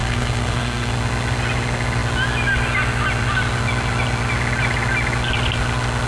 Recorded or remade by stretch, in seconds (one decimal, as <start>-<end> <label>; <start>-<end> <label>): 0.0-0.9 remade; 0.9-6.1 recorded